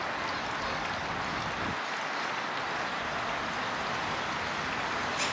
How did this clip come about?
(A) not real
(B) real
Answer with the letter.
B